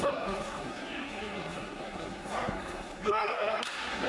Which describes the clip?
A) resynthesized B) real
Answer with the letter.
A